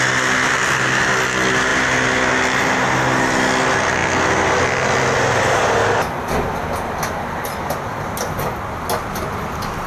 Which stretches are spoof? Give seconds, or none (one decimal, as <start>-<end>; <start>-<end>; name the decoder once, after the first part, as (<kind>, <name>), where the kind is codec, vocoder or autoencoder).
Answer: none